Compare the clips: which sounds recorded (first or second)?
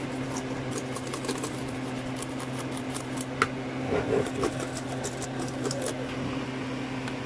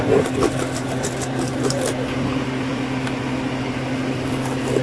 first